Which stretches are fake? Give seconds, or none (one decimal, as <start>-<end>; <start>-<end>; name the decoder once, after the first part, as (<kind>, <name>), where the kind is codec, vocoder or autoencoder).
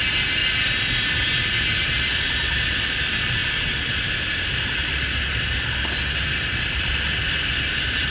none